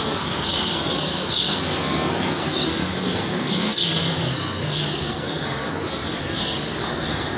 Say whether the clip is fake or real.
fake